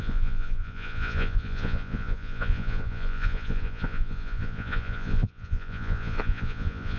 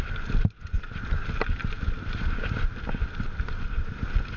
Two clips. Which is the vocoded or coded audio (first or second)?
first